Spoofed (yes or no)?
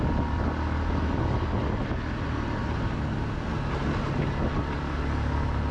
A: no